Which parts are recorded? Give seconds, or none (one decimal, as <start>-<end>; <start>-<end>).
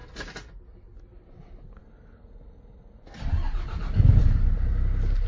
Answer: 0.0-5.3